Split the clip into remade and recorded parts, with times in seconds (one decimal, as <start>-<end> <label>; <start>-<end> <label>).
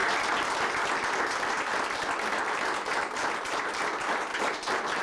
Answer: 0.0-5.0 recorded